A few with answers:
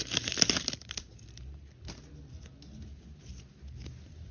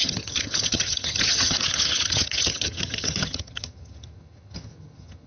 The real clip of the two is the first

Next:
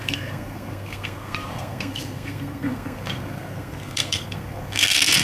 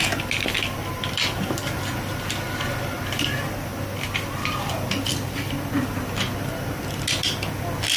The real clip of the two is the second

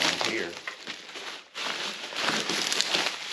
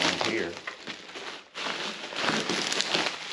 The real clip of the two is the second